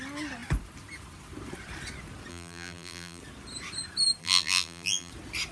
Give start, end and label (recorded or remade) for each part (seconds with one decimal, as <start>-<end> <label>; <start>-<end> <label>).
0.0-2.3 recorded; 2.3-3.2 remade; 3.2-4.2 recorded; 4.2-5.1 remade; 5.1-5.5 recorded